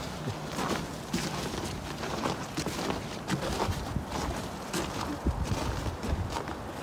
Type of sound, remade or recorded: recorded